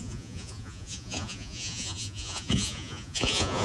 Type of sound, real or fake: fake